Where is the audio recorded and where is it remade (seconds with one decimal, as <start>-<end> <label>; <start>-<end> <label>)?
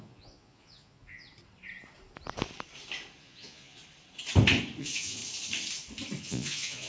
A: 0.0-1.3 remade; 1.3-3.2 recorded; 3.2-3.8 remade; 3.8-4.8 recorded; 4.8-5.2 remade; 5.2-6.2 recorded; 6.2-6.9 remade